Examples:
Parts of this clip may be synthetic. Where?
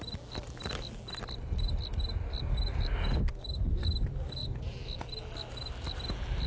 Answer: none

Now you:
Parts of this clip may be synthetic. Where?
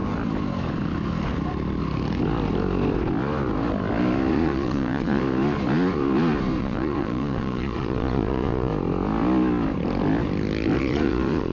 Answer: 4.3-5.2 (vocoder, Vocos); 6.6-8.7; 10.8-11.5